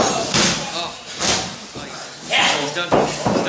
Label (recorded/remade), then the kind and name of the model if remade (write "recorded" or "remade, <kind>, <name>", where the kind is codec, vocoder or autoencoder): recorded